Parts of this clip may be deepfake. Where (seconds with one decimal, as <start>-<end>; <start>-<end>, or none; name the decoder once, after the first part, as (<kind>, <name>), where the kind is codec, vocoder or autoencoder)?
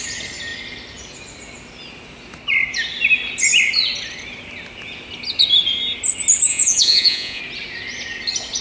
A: 6.5-7.4 (vocoder, Vocos)